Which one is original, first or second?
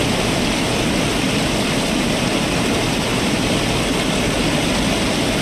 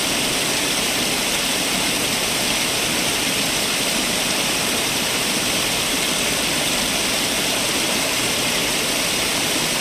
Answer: first